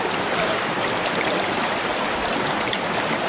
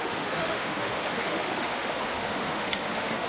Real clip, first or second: first